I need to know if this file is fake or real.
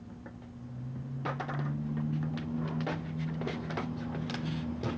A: real